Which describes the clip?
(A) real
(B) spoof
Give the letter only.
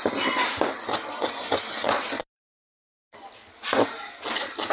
A